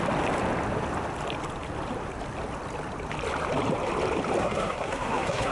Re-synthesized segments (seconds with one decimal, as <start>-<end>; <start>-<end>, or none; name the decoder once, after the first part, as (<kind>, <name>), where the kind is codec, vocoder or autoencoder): 4.4-5.5 (codec, SNAC)